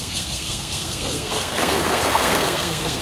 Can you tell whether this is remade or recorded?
remade